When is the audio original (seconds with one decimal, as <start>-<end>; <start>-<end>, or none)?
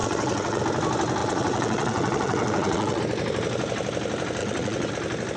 0.6-1.2; 3.0-4.4; 4.9-5.4